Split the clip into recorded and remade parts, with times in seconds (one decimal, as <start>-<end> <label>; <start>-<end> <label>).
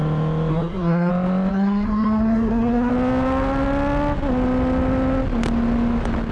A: 0.0-0.5 recorded; 0.5-1.1 remade; 1.1-1.5 recorded; 1.5-2.9 remade; 2.9-6.3 recorded